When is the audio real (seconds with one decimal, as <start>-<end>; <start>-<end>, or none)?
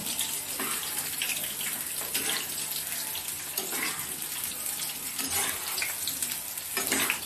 0.0-7.3